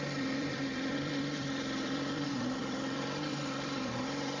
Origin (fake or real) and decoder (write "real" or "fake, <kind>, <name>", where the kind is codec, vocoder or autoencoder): fake, vocoder, BigVGAN v2